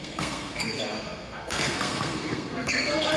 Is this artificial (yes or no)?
yes